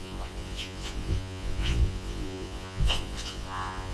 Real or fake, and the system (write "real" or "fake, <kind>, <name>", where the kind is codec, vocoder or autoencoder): fake, vocoder, Vocos